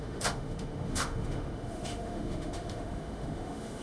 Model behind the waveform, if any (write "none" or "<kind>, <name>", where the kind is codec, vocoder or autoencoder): autoencoder, DAC-VAE